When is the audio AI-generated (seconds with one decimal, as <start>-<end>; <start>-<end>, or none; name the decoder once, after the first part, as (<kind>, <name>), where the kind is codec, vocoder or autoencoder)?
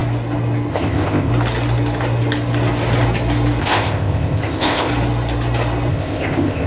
0.7-1.3 (codec, ZipCodec); 3.6-4.9; 5.9-6.7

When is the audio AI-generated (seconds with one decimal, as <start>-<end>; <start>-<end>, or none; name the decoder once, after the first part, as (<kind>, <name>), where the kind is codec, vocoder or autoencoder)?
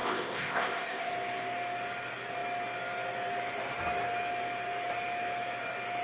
0.0-1.1 (codec, ZipCodec)